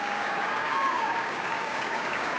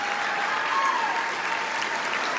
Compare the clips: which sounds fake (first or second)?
first